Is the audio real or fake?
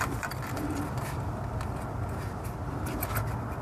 real